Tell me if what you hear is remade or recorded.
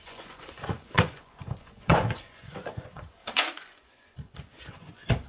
remade